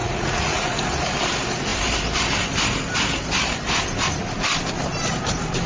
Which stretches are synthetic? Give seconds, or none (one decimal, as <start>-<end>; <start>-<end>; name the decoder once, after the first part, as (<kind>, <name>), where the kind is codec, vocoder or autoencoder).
0.0-0.8 (vocoder, Vocos)